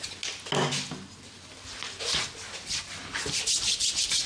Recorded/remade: recorded